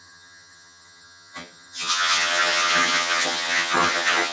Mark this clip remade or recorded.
remade